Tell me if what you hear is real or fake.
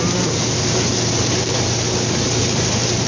real